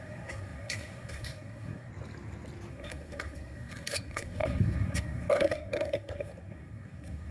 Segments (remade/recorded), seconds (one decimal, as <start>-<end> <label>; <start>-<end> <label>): 0.0-1.9 remade; 1.9-2.7 recorded; 2.7-7.3 remade